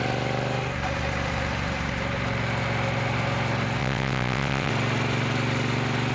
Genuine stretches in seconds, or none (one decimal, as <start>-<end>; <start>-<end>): 0.0-3.8; 4.7-6.1